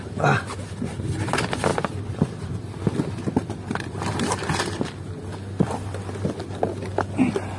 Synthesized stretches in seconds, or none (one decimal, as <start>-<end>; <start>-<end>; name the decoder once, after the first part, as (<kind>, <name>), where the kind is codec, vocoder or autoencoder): none